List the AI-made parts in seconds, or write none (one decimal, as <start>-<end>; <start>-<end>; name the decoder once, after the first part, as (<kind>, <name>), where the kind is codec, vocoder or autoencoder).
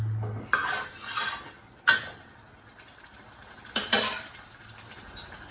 2.9-4.0 (vocoder, BigVGAN v2)